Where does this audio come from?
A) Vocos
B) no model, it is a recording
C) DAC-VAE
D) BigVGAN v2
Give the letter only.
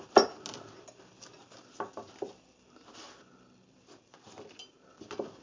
B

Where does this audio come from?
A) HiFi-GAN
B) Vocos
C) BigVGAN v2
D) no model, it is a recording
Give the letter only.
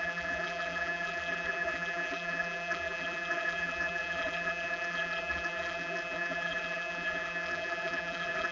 C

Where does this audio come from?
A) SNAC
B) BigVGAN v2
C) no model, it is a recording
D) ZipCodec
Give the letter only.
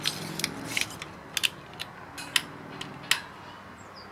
C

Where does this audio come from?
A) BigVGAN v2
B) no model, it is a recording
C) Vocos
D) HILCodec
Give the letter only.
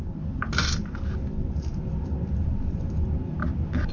B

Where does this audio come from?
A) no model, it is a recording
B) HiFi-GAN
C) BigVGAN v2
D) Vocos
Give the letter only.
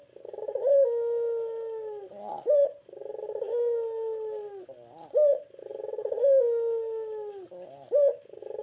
A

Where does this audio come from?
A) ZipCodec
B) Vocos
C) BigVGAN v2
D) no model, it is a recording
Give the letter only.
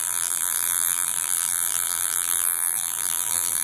C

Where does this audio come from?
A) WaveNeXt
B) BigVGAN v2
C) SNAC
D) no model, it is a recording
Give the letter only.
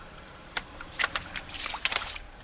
B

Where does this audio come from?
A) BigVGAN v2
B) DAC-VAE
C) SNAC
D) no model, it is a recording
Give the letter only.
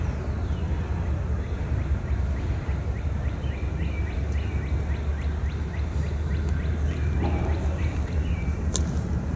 D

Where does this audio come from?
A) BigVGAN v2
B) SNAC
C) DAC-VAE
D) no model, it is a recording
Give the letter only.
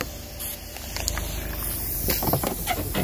D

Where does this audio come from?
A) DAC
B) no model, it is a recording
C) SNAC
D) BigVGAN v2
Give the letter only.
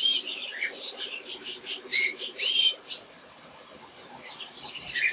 D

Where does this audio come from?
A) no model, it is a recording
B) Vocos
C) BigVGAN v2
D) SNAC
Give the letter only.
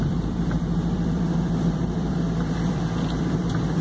C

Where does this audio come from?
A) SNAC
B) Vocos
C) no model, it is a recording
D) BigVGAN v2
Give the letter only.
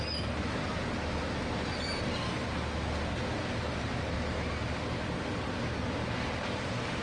C